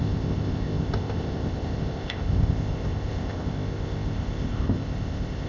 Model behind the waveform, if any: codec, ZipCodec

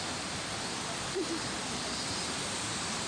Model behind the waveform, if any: none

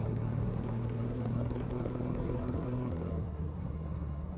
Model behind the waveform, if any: codec, SNAC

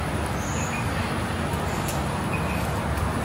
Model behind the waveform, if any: none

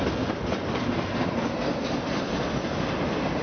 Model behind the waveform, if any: none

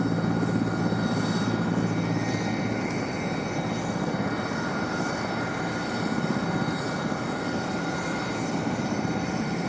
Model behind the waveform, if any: none